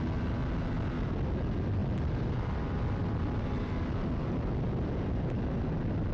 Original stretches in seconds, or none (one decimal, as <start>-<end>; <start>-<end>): 0.0-1.8; 4.5-6.1